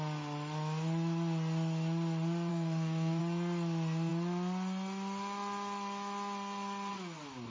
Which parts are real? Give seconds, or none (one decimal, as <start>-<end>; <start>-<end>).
0.0-2.5; 3.2-7.5